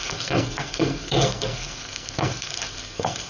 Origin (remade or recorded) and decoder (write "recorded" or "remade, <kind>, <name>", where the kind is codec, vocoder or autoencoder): remade, codec, SNAC